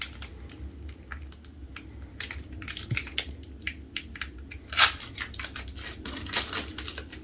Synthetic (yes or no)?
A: no